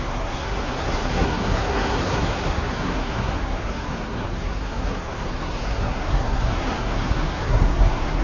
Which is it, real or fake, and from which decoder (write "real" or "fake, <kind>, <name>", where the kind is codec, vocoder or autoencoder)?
fake, codec, SNAC